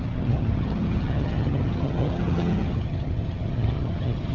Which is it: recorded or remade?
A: remade